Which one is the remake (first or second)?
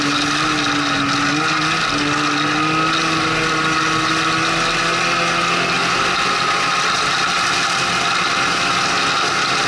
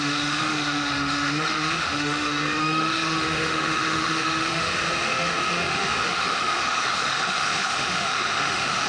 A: second